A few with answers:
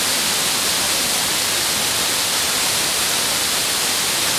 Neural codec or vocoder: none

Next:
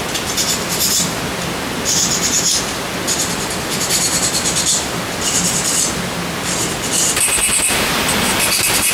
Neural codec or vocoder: none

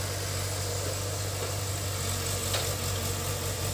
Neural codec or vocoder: none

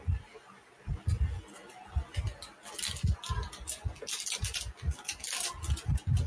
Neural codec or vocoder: none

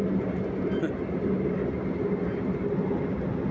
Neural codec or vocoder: none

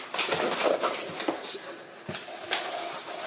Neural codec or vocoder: none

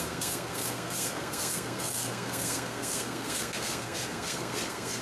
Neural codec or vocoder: codec, SNAC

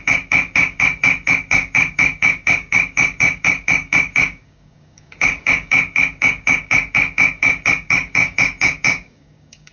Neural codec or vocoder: codec, DAC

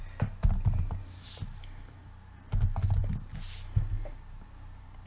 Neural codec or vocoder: none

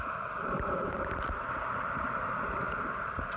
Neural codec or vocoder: vocoder, BigVGAN v2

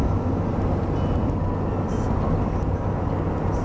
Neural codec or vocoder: none